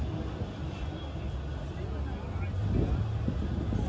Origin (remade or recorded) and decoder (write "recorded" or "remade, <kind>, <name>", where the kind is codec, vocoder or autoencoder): recorded